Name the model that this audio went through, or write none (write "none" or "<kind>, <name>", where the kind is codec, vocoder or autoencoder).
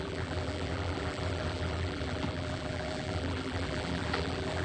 vocoder, BigVGAN v2